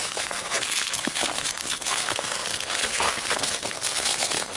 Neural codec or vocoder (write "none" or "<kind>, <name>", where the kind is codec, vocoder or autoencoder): codec, SNAC